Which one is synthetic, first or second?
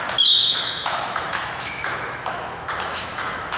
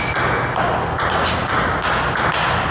first